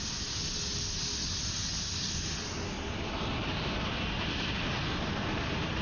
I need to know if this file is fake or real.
real